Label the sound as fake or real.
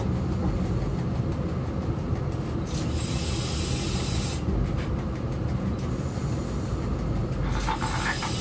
real